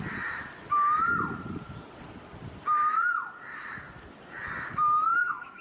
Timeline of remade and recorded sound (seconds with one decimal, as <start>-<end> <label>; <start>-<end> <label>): 0.0-5.1 recorded; 5.1-5.6 remade